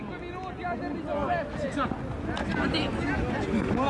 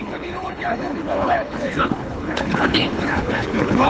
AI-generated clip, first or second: second